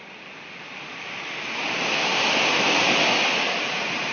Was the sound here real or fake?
real